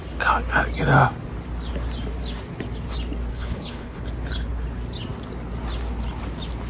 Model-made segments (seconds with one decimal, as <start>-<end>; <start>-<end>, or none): 3.3-4.0